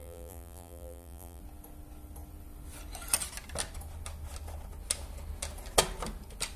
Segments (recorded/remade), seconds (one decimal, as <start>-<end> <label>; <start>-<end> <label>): 0.0-1.4 remade; 1.4-6.6 recorded